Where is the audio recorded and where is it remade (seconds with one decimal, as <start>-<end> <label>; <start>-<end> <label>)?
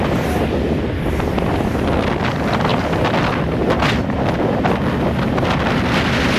0.0-6.4 recorded